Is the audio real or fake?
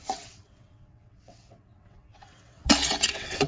fake